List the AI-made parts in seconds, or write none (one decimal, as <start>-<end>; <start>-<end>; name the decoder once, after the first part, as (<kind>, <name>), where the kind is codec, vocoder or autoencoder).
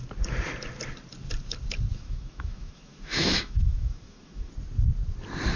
1.9-4.5 (autoencoder, DAC-VAE)